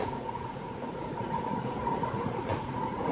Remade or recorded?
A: remade